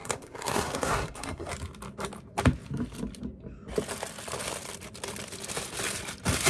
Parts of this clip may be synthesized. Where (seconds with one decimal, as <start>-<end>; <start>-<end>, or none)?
0.0-1.5

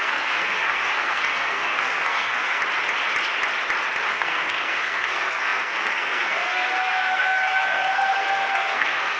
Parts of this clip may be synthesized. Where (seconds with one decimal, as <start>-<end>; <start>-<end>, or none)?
0.0-2.6; 4.1-9.2

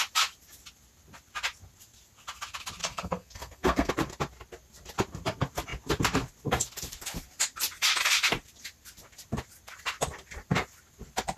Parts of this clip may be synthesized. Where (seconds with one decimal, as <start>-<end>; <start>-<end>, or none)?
2.8-3.9

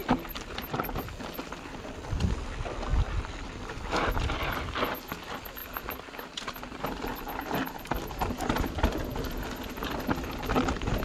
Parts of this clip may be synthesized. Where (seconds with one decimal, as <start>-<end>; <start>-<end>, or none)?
none

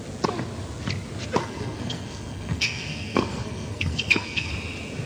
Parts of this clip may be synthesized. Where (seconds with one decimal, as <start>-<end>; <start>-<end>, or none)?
1.4-4.5

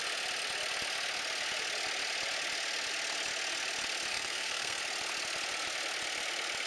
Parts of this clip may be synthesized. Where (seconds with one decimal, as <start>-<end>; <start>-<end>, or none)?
4.1-4.8